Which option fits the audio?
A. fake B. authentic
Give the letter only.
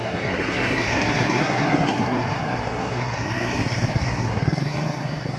A